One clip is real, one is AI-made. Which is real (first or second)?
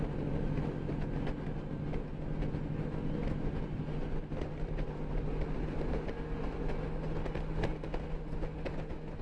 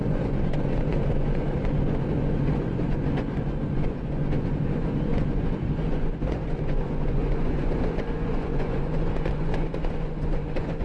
first